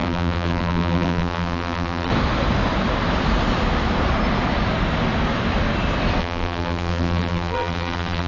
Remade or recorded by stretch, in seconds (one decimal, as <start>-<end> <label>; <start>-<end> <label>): 0.0-2.1 remade; 2.1-6.2 recorded; 6.2-8.3 remade

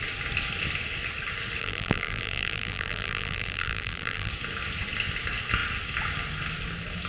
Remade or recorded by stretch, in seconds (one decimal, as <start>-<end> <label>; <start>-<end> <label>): 0.0-1.6 recorded; 1.6-4.3 remade; 4.3-7.1 recorded

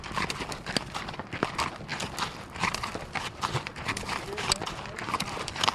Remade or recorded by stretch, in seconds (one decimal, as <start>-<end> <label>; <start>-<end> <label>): 0.0-5.7 recorded

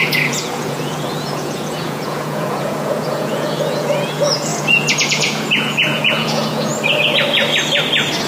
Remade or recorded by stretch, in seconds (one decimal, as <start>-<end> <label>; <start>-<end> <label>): 0.0-6.7 remade; 6.7-8.3 recorded

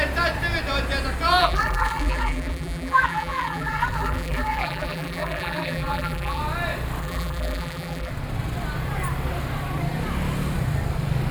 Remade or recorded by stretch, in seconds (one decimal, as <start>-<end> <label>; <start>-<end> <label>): 0.0-1.4 recorded; 1.4-6.4 remade; 6.4-7.0 recorded; 7.0-8.1 remade; 8.1-11.3 recorded

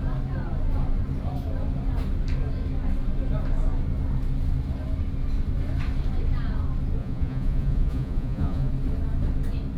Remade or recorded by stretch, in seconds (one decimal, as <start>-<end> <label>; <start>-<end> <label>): 0.0-7.0 recorded; 7.0-8.7 remade; 8.7-9.8 recorded

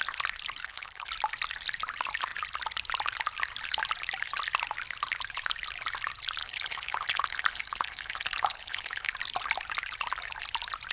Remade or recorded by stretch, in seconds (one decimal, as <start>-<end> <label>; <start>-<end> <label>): 0.0-0.6 recorded; 0.6-1.1 remade; 1.1-6.4 recorded; 6.4-9.1 remade; 9.1-10.9 recorded